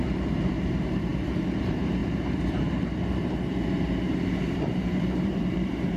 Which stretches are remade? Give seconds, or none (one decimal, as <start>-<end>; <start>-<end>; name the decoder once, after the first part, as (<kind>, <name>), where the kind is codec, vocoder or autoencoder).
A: 0.0-6.0 (vocoder, BigVGAN v2)